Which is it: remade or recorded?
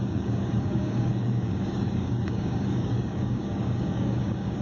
remade